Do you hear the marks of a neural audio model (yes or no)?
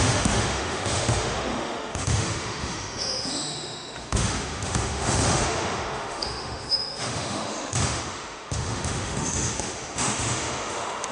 yes